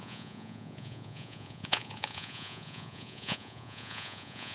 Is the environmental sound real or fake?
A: fake